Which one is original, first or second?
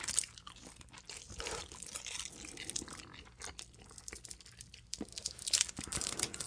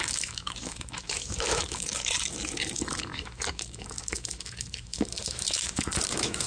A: first